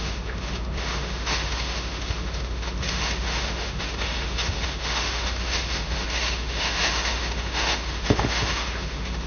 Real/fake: fake